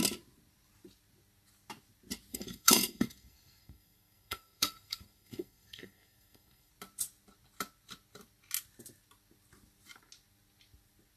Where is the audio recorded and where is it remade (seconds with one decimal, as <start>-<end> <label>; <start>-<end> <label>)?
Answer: 0.0-2.3 recorded; 2.3-6.7 remade; 6.7-11.2 recorded